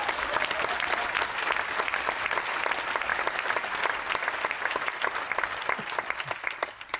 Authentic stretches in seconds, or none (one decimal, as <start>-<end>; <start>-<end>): 0.0-7.0